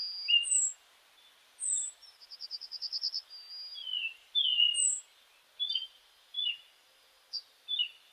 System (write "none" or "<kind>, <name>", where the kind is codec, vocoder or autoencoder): none